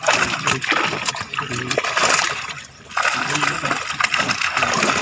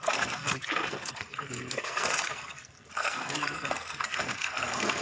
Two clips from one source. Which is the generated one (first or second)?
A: second